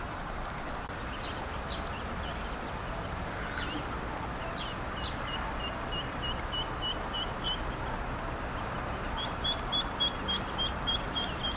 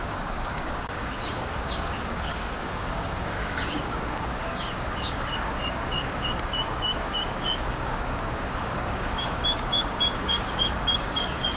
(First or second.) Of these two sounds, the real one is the first